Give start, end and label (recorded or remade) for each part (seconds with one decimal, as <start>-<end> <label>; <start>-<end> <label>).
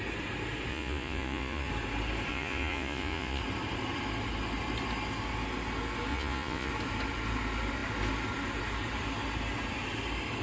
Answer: 0.0-0.7 recorded; 0.7-1.7 remade; 1.7-2.3 recorded; 2.3-3.4 remade; 3.4-6.1 recorded; 6.1-6.7 remade; 6.7-10.4 recorded